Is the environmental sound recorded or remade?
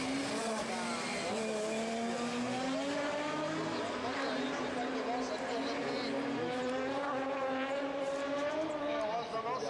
recorded